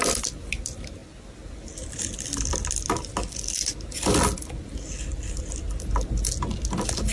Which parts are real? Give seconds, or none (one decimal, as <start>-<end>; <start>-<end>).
0.0-7.1